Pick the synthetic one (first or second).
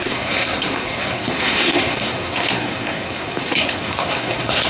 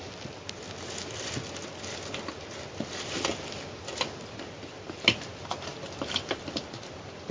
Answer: first